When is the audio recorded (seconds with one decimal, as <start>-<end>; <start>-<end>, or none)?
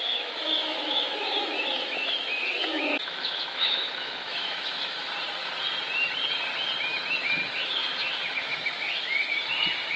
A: 5.0-6.9; 9.3-10.0